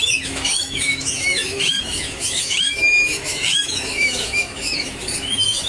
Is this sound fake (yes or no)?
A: yes